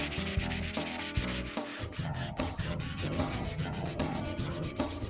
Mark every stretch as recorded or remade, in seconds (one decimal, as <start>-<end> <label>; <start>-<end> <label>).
0.0-1.8 recorded; 1.8-5.1 remade